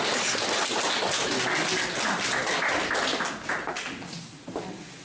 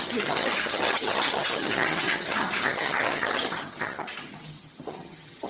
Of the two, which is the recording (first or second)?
first